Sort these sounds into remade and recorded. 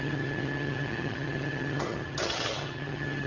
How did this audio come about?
remade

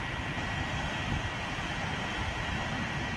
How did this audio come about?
recorded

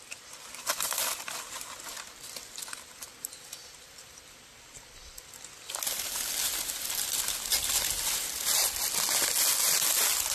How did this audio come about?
recorded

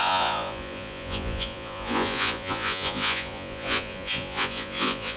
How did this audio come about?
remade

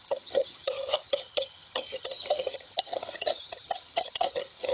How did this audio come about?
remade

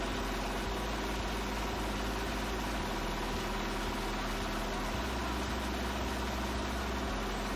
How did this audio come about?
recorded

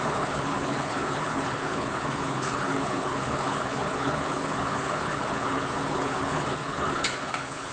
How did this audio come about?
remade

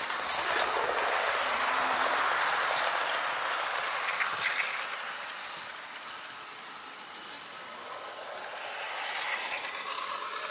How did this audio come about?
recorded